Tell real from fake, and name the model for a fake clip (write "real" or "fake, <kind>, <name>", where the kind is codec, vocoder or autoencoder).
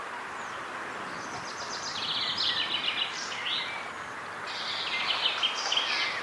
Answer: real